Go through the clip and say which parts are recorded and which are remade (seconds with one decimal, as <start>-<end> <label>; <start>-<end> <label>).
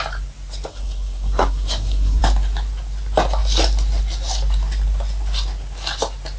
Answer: 0.0-0.7 recorded; 0.7-2.2 remade; 2.2-6.4 recorded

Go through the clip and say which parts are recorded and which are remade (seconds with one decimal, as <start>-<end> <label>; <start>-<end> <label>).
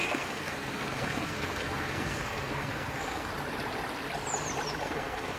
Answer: 0.0-3.3 remade; 3.3-4.8 recorded; 4.8-5.4 remade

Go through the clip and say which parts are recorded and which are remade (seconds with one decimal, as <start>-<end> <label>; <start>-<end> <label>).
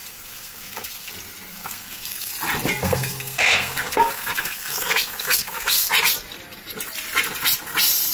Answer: 0.0-1.1 remade; 1.1-1.5 recorded; 1.5-2.3 remade; 2.3-2.8 recorded; 2.8-5.9 remade; 5.9-8.1 recorded